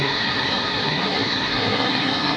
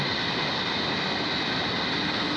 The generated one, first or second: first